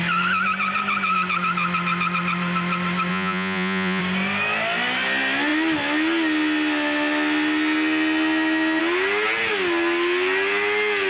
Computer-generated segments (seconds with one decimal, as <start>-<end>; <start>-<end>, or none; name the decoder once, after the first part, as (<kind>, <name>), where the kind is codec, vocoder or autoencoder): 3.1-4.0 (vocoder, Vocos)